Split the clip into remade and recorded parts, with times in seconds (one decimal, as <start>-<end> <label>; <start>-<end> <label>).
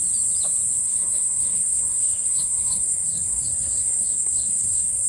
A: 0.0-0.8 recorded; 0.8-5.1 remade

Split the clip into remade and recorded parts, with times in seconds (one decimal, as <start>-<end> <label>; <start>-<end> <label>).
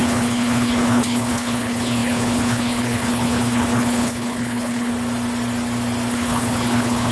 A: 0.0-4.9 remade; 4.9-6.1 recorded; 6.1-7.1 remade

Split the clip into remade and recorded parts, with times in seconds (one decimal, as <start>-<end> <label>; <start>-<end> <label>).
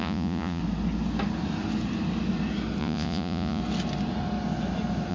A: 0.0-0.6 remade; 0.6-2.8 recorded; 2.8-3.6 remade; 3.6-5.1 recorded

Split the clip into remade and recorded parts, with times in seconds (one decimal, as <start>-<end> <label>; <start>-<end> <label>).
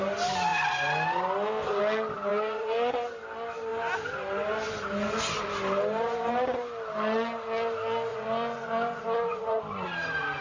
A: 0.0-2.3 recorded; 2.3-3.1 remade; 3.1-8.1 recorded; 8.1-9.6 remade; 9.6-10.4 recorded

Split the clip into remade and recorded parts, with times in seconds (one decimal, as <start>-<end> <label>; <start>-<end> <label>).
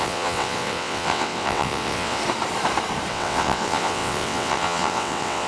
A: 0.0-2.2 remade; 2.2-3.1 recorded; 3.1-5.5 remade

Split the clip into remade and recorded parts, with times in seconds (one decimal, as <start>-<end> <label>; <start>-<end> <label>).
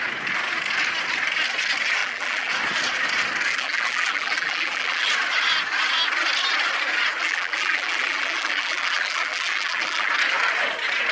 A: 0.0-2.0 recorded; 2.0-2.5 remade; 2.5-3.5 recorded; 3.5-5.1 remade; 5.1-7.2 recorded; 7.2-10.1 remade; 10.1-11.1 recorded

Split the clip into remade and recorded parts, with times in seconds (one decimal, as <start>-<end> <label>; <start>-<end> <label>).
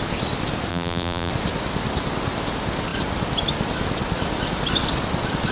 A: 0.0-0.7 recorded; 0.7-1.3 remade; 1.3-5.5 recorded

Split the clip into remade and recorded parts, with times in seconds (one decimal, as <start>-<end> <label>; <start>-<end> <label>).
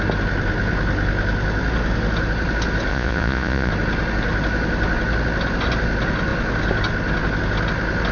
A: 0.0-2.9 recorded; 2.9-3.7 remade; 3.7-8.1 recorded